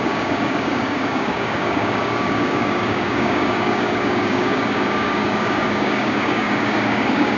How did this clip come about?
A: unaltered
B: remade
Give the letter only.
B